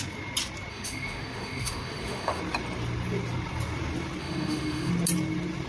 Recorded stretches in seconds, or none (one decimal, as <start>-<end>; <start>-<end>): 0.0-0.7; 2.4-4.2; 4.9-5.7